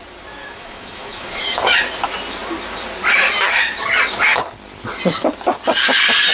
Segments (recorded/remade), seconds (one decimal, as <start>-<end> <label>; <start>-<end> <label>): 0.0-0.4 recorded; 0.4-1.8 remade; 1.8-6.3 recorded